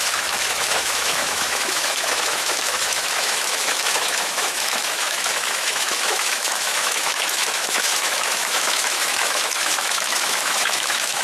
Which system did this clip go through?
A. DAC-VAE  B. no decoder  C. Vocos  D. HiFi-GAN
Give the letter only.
A